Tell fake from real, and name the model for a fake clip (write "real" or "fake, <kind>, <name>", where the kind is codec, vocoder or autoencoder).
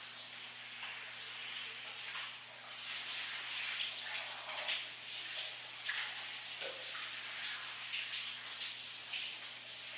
real